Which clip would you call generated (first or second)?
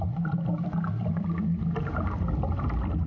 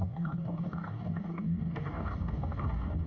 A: second